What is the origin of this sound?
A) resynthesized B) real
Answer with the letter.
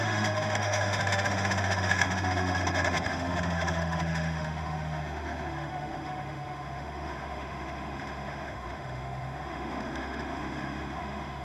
A